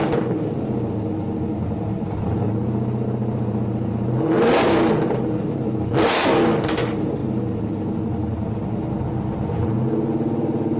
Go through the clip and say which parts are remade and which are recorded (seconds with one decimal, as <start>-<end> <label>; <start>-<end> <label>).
0.0-3.2 recorded; 3.2-4.1 remade; 4.1-10.8 recorded